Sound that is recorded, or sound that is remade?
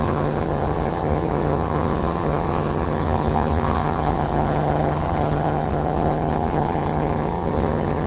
remade